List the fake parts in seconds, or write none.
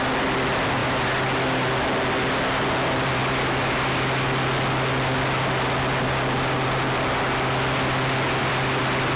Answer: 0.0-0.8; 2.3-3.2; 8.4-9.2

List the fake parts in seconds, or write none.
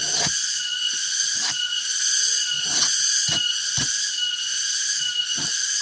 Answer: 0.4-3.9